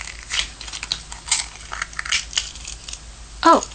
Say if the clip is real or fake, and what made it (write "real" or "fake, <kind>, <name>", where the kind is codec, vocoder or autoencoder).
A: real